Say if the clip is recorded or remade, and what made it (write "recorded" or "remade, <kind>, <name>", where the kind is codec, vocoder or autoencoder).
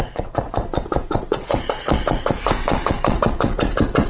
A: remade, vocoder, Vocos